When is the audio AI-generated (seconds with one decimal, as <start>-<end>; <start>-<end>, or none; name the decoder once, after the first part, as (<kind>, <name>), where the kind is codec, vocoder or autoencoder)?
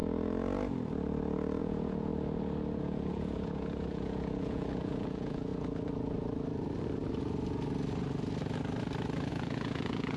1.6-2.1 (vocoder, Vocos); 2.8-5.5; 9.3-10.2